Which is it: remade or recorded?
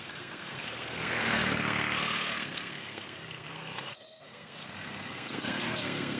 remade